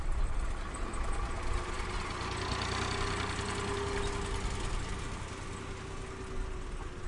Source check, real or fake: real